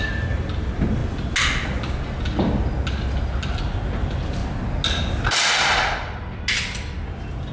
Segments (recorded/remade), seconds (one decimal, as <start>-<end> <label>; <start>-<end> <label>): 0.0-7.5 recorded